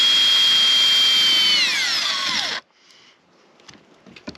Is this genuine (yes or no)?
yes